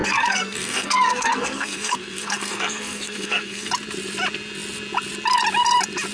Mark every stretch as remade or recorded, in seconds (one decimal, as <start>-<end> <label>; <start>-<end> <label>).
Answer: 0.0-3.7 remade; 3.7-6.1 recorded